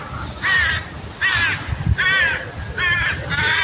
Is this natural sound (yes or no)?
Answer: yes